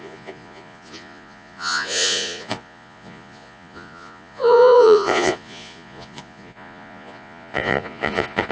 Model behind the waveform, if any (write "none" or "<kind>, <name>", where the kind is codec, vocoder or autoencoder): vocoder, Vocos